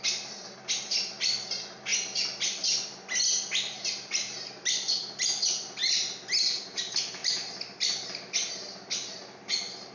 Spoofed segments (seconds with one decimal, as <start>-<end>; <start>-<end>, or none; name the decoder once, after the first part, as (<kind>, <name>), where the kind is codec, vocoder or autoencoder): none

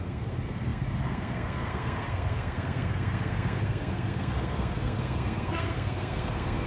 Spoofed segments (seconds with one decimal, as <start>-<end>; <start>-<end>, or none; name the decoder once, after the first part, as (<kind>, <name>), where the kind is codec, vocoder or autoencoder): 0.0-6.7 (codec, SNAC)

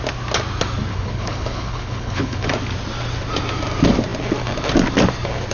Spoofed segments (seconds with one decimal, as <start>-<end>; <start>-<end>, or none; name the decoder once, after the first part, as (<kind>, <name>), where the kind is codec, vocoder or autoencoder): 0.9-2.5 (codec, HILCodec)